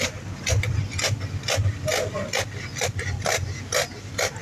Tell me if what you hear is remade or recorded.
recorded